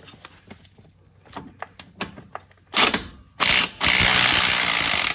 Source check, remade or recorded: recorded